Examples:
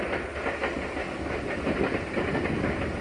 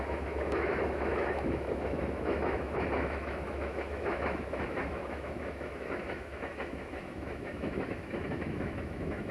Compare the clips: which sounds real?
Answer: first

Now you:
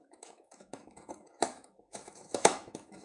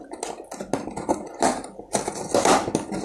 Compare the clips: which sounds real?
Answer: second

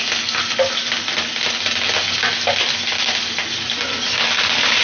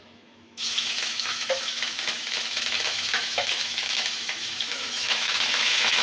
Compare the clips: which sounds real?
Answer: first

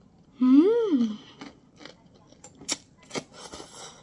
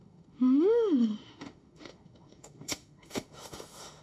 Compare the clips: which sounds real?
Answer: first